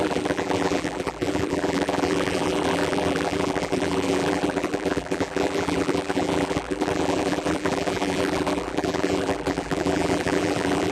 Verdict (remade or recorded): remade